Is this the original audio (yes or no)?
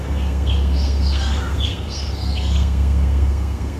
no